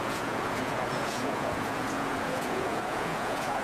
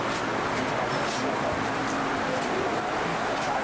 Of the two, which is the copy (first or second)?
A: first